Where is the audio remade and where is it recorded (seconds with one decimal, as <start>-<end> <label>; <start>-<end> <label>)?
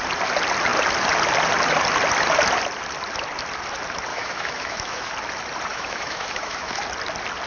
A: 0.0-4.1 recorded; 4.1-5.1 remade; 5.1-5.7 recorded; 5.7-6.8 remade; 6.8-7.5 recorded